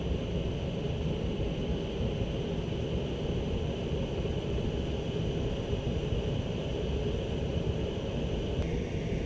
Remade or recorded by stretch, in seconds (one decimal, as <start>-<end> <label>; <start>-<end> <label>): 0.0-7.5 recorded; 7.5-8.4 remade; 8.4-9.3 recorded